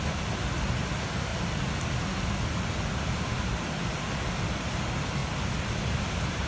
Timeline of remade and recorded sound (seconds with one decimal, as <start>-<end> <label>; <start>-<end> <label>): 0.0-6.5 recorded